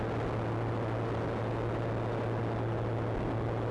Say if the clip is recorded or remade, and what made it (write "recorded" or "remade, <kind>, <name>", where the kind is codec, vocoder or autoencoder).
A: recorded